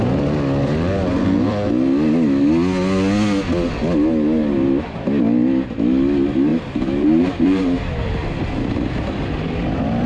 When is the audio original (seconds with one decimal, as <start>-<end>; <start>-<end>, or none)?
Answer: 0.0-6.5; 8.1-10.1